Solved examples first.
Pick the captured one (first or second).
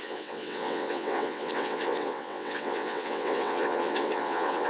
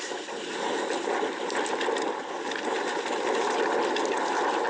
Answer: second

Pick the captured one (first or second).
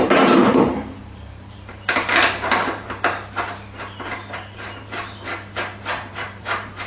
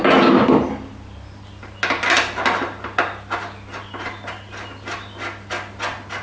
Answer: second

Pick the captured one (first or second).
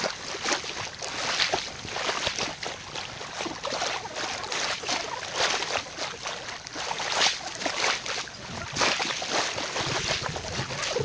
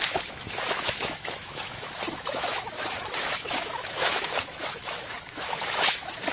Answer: first